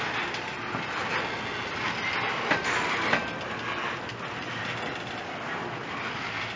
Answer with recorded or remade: recorded